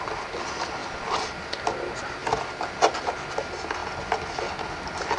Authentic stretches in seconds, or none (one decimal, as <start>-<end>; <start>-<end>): 0.0-0.8; 1.3-5.2